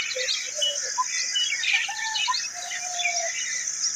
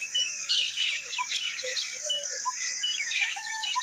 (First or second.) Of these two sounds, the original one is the first